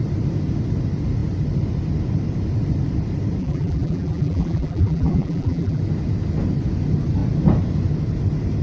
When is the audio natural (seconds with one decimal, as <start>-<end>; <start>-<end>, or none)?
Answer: 0.0-3.4; 5.8-8.6